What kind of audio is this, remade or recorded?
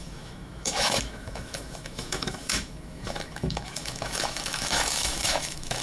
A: remade